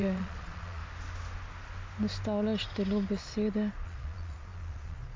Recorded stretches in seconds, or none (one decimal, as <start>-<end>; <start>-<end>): 0.8-3.7

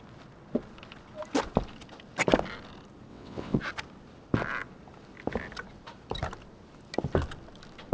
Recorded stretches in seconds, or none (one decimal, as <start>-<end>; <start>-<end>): 0.0-3.1; 3.6-7.9

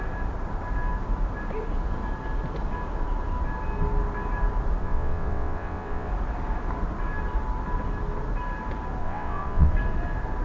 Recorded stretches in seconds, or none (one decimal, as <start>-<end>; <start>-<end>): 0.0-4.8; 6.1-9.0; 9.7-10.4